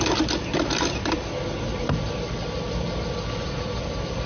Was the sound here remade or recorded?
recorded